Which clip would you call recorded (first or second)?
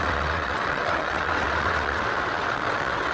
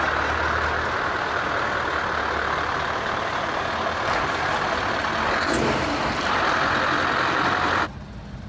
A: second